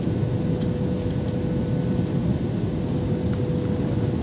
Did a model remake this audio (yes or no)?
no